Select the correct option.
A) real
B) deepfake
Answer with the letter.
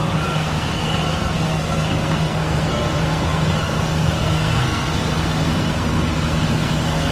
B